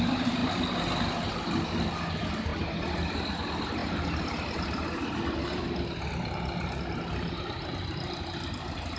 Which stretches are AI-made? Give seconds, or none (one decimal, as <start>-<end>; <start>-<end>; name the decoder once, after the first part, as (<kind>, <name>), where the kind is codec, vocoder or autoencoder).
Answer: 0.0-0.4 (vocoder, BigVGAN v2); 1.3-2.5; 3.4-3.8; 7.3-9.0